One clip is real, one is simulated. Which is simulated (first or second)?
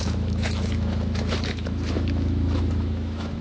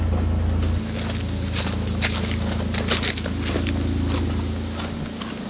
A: first